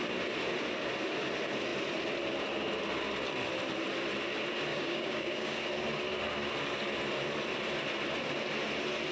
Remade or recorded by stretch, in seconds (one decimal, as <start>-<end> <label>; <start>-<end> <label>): 0.0-4.7 recorded; 4.7-5.7 remade; 5.7-9.1 recorded